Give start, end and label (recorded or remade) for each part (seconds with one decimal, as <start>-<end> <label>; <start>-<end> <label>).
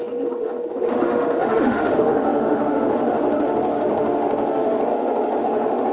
0.0-4.9 remade; 4.9-5.4 recorded; 5.4-5.9 remade